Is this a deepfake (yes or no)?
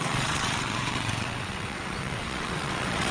yes